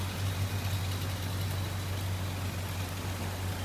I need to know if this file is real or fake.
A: real